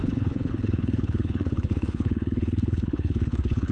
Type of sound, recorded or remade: remade